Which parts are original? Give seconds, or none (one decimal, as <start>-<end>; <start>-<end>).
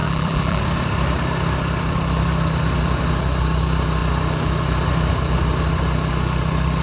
0.6-6.8